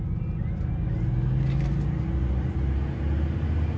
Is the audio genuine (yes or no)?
yes